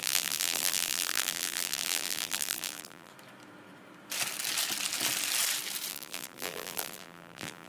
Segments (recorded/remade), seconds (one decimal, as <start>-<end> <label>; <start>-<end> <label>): 0.0-3.1 remade; 3.1-5.9 recorded; 5.9-7.7 remade